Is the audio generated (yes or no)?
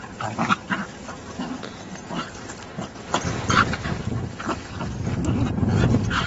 no